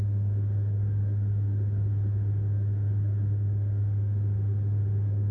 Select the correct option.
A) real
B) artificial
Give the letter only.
B